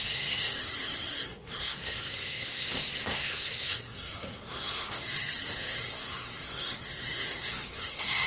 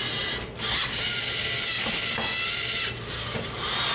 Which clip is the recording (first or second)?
second